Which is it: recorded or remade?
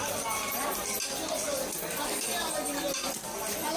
recorded